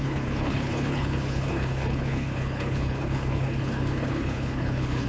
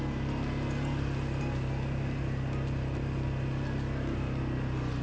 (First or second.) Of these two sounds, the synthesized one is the first